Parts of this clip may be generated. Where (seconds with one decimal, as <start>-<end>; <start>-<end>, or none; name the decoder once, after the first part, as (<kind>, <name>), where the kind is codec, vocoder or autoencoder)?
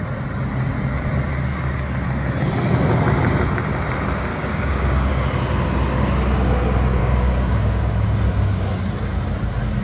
4.3-5.1 (codec, DAC); 7.0-7.8